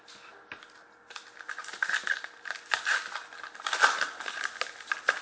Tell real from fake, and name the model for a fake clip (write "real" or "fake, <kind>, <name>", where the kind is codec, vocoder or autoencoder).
real